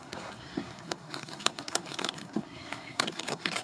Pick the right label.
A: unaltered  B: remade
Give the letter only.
B